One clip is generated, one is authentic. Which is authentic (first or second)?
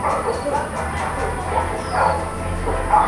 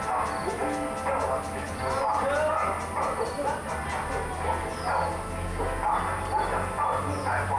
second